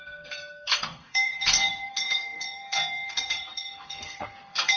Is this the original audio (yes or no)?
no